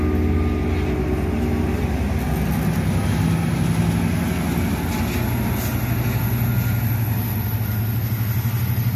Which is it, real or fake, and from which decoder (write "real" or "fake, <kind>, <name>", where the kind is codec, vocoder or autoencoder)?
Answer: real